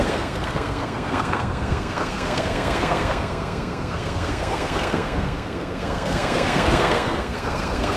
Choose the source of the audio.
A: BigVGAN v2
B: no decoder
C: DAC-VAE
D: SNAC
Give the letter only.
D